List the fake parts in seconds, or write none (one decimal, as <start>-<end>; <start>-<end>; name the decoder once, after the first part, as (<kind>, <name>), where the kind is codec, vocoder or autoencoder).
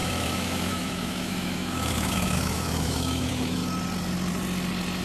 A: 0.0-3.6 (autoencoder, DAC-VAE)